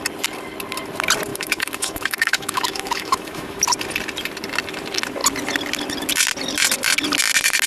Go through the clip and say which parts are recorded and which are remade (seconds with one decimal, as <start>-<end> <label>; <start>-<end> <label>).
0.0-1.3 recorded; 1.3-3.6 remade; 3.6-7.7 recorded